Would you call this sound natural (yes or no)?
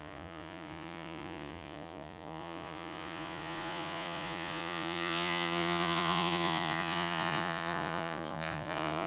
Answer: no